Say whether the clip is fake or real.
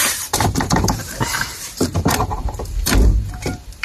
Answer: fake